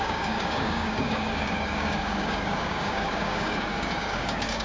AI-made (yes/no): yes